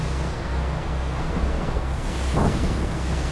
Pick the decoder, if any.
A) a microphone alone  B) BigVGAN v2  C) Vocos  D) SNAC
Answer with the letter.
D